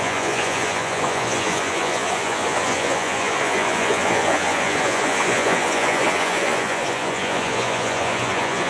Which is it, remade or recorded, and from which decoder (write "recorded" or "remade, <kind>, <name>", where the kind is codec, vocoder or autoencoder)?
remade, vocoder, Vocos